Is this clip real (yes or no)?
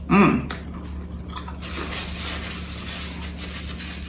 yes